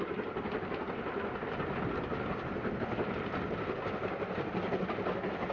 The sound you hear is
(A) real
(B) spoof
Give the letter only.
A